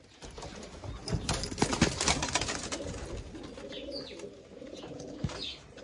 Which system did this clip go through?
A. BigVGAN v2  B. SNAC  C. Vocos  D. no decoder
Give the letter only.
D